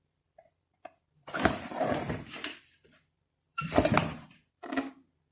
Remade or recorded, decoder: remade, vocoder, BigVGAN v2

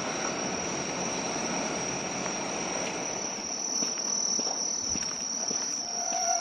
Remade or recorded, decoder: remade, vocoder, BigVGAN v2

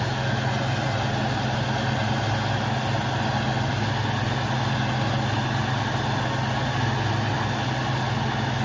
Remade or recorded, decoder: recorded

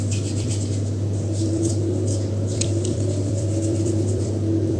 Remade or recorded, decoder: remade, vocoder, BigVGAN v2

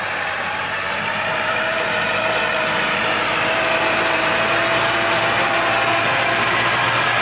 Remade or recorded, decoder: remade, vocoder, BigVGAN v2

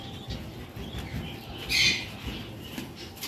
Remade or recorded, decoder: recorded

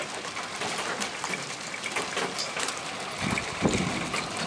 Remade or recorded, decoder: recorded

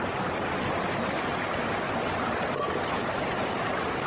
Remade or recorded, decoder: remade, vocoder, BigVGAN v2